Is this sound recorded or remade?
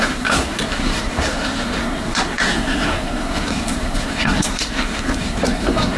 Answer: remade